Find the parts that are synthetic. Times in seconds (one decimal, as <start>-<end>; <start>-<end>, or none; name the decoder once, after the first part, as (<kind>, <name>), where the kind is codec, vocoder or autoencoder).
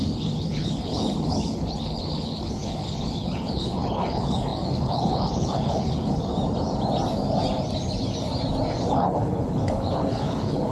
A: 0.0-6.3 (codec, HILCodec); 8.9-10.7